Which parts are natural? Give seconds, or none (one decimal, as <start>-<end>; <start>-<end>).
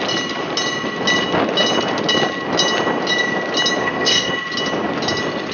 0.0-3.8; 4.3-5.5